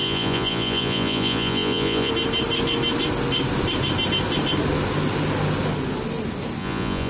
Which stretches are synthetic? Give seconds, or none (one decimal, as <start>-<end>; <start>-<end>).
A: 0.0-2.1; 6.6-7.1